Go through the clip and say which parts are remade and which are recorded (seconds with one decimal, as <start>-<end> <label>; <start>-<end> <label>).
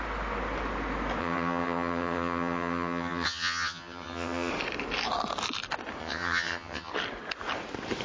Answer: 0.0-1.2 recorded; 1.2-4.5 remade; 4.5-6.0 recorded; 6.0-6.9 remade; 6.9-8.0 recorded